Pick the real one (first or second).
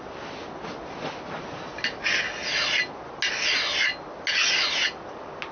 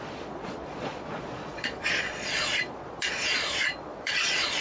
first